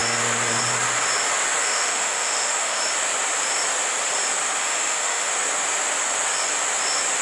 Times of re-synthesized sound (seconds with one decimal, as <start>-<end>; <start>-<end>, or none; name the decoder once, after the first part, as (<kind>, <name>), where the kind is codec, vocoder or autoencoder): 1.6-2.8 (autoencoder, DAC-VAE); 4.6-5.3